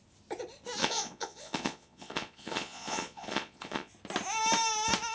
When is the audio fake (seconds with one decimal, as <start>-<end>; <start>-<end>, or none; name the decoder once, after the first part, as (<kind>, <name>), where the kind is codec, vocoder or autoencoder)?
0.8-3.9 (vocoder, Vocos)